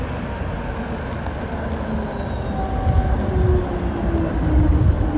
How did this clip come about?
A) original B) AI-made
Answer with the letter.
A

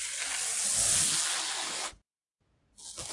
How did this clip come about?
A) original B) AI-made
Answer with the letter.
A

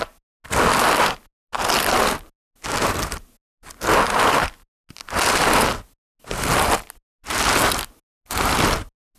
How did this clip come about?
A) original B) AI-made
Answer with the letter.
A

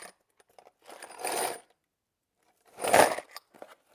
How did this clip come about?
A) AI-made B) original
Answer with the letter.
B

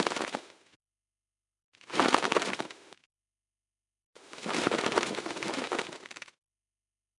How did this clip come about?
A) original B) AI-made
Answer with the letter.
B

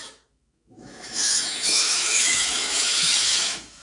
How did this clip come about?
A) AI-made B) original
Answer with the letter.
A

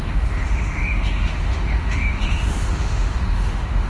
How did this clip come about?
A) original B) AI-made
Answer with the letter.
B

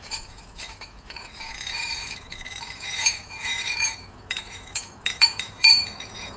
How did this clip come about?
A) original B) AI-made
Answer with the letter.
B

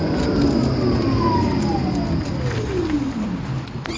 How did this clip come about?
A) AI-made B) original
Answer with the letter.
B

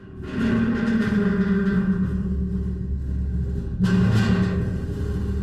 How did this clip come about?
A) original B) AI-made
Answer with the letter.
A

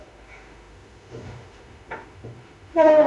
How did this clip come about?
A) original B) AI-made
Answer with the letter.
B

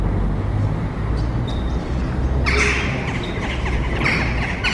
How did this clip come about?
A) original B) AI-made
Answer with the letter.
A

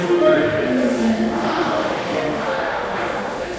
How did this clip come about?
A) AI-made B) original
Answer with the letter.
A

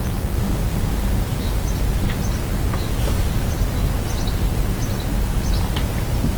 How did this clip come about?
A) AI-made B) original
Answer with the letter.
B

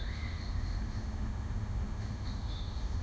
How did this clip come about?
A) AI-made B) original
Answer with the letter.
A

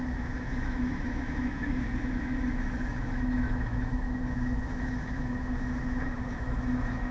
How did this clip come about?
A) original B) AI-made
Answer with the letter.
B